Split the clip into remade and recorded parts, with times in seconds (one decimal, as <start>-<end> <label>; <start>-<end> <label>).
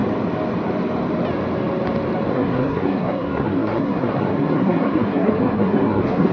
0.0-2.3 recorded; 2.3-6.3 remade